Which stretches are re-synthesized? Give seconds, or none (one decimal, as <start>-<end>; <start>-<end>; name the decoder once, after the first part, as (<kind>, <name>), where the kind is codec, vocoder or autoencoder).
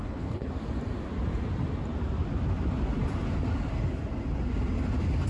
0.0-0.5 (codec, HILCodec)